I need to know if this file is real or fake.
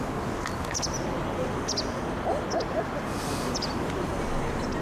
real